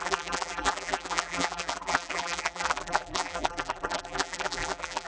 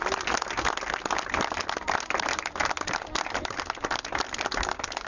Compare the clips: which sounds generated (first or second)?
first